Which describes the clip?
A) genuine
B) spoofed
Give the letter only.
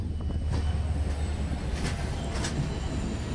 A